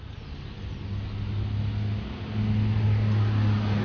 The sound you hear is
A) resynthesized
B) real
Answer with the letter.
B